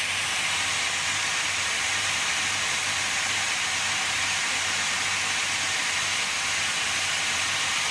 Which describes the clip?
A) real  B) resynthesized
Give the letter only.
A